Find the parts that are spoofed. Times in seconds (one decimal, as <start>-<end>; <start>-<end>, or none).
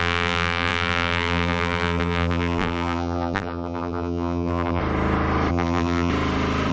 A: 0.0-4.8; 5.5-6.1